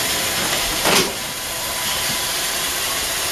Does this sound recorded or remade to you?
remade